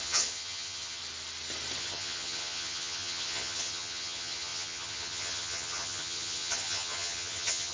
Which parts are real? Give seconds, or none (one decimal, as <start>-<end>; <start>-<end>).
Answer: 1.0-1.8